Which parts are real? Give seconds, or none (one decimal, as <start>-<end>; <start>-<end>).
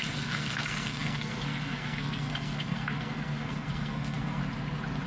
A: 4.4-5.1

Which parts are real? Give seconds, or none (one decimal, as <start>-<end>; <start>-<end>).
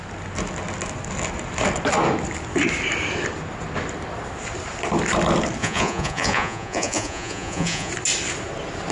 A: 0.0-5.6; 7.9-8.9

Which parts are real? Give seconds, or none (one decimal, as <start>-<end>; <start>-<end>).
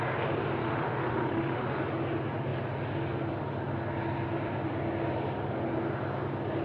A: 0.0-0.6; 1.8-6.6